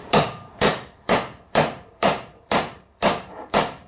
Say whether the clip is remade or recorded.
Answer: remade